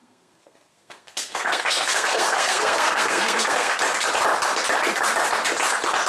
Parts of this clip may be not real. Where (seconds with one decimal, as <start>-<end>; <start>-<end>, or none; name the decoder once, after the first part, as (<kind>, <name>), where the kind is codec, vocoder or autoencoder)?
0.0-3.7 (codec, SNAC)